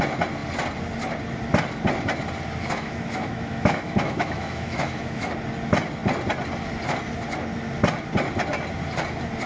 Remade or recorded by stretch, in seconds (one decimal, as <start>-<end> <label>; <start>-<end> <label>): 0.0-2.6 recorded; 2.6-5.3 remade; 5.3-9.5 recorded